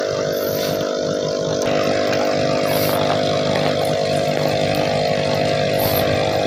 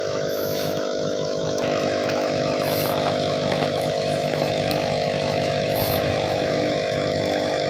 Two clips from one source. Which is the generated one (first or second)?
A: second